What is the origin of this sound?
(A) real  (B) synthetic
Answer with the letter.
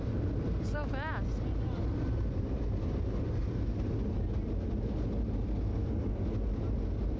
A